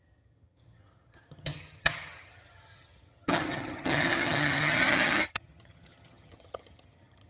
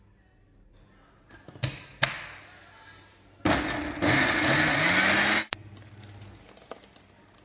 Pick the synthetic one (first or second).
first